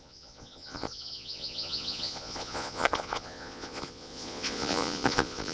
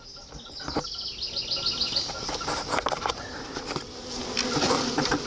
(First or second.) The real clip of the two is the second